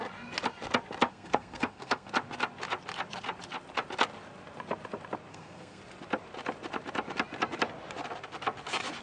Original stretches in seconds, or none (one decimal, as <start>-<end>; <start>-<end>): 0.0-1.1; 2.1-5.3; 5.8-9.0